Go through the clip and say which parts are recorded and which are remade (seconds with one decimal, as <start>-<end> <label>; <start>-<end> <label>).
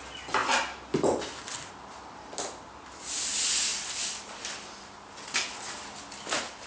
0.0-6.7 recorded